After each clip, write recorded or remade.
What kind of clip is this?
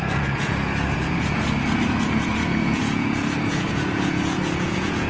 remade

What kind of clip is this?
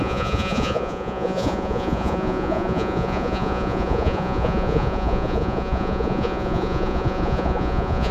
remade